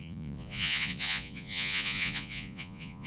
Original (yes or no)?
no